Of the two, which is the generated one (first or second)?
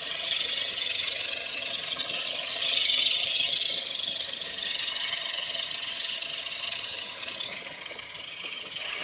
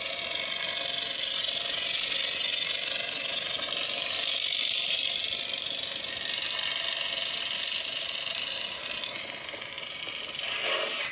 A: first